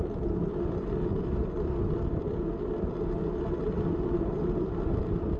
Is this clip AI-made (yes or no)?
no